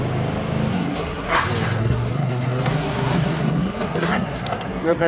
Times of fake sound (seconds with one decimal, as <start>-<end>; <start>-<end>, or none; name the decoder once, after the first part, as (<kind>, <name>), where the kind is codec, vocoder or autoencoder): 0.7-1.4 (codec, SNAC); 1.8-5.1